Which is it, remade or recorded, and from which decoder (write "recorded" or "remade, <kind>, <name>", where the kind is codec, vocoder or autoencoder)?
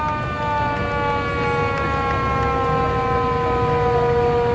recorded